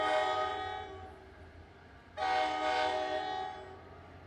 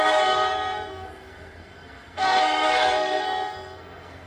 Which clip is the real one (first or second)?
first